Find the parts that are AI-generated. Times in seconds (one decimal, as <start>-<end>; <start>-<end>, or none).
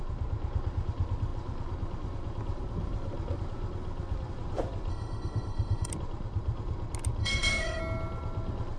4.9-5.9; 7.2-7.8